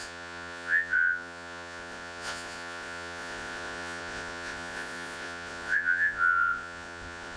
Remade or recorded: remade